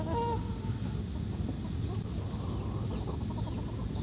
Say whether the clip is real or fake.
real